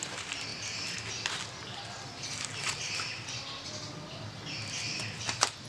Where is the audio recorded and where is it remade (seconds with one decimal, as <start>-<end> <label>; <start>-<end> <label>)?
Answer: 0.0-5.7 recorded